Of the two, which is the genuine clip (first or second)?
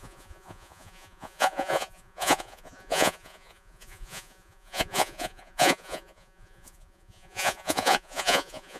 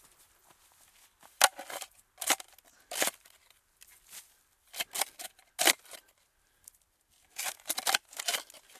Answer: second